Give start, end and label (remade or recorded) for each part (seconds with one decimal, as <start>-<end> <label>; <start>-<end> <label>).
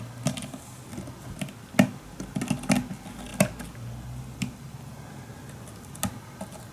0.0-6.7 recorded